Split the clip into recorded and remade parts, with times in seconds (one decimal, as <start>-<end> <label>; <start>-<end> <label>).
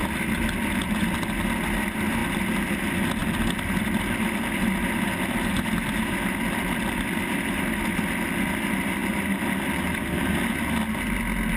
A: 0.0-3.2 recorded; 3.2-8.5 remade; 8.5-9.0 recorded; 9.0-10.2 remade; 10.2-11.6 recorded